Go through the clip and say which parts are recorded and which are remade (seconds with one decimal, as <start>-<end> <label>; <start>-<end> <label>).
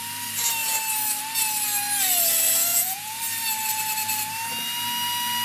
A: 0.0-2.7 recorded; 2.7-3.2 remade; 3.2-5.4 recorded